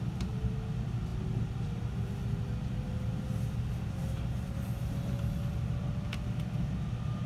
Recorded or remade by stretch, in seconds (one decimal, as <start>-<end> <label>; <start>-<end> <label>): 0.0-7.3 recorded